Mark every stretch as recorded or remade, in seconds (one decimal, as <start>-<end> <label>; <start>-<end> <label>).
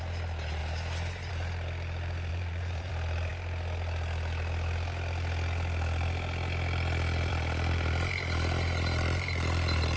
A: 0.0-2.3 recorded; 2.3-2.9 remade; 2.9-10.0 recorded